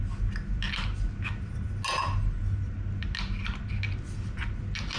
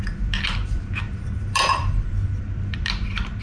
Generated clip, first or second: second